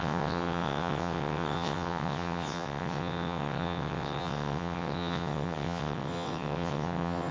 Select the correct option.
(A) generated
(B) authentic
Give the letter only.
A